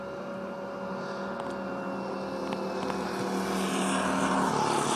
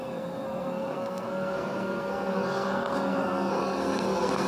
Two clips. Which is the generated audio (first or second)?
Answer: second